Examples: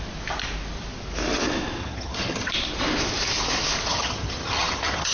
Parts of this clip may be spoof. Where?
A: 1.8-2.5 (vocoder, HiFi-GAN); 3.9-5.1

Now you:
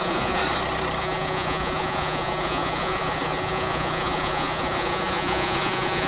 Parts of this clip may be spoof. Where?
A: 0.0-0.4 (vocoder, Vocos); 1.0-6.1

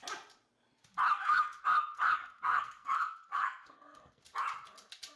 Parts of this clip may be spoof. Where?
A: 1.1-4.2 (codec, SNAC)

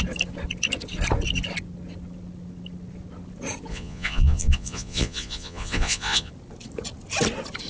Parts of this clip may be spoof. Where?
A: 3.7-6.3 (vocoder, Vocos)

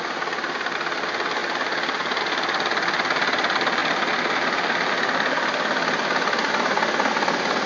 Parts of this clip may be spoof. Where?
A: none

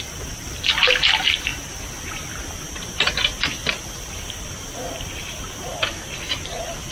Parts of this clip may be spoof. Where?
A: none

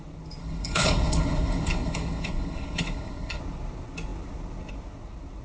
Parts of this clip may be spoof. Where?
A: 0.4-3.4 (codec, HILCodec)